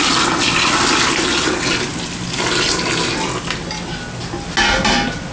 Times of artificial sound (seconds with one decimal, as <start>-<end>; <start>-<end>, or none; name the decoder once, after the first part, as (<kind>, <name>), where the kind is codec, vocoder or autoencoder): none